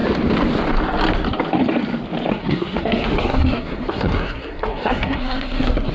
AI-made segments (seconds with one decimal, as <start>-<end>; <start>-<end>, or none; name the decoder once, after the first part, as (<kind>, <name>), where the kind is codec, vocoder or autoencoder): 2.3-5.9 (codec, SNAC)